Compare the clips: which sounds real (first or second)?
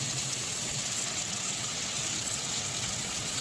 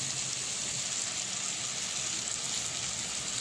second